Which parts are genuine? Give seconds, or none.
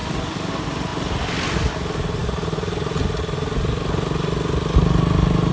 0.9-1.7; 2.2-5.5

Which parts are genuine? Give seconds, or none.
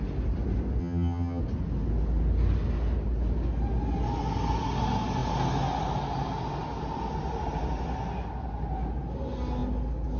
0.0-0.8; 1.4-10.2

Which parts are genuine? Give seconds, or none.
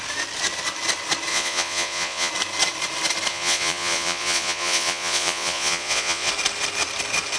0.0-1.3; 2.3-3.3; 6.3-7.4